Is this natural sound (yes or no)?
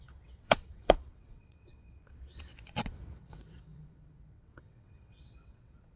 no